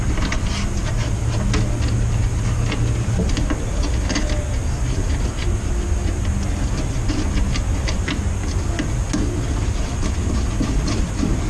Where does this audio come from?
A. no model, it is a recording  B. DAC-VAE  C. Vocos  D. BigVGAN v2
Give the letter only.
A